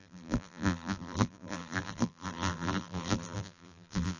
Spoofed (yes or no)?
yes